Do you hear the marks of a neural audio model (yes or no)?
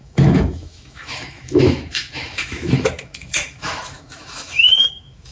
yes